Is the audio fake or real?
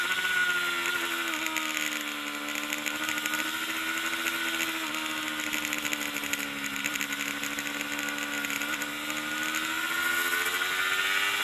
real